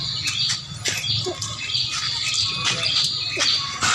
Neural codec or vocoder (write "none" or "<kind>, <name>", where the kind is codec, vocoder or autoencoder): none